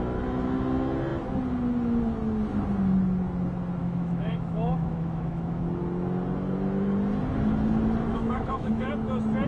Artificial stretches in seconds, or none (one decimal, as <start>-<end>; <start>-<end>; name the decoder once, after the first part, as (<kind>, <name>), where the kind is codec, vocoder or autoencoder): 3.8-5.6 (autoencoder, DAC-VAE); 8.1-8.9